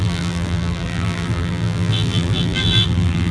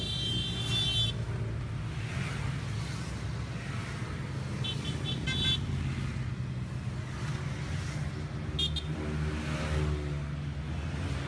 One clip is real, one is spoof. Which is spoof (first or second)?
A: first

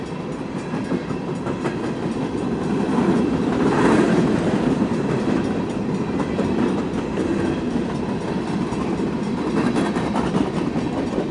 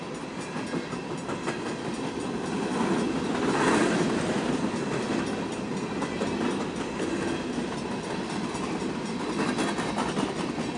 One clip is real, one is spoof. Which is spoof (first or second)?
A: first